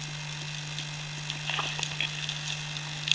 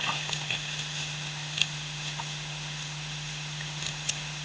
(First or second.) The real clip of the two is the first